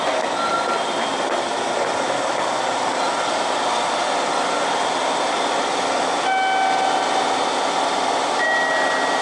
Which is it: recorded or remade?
recorded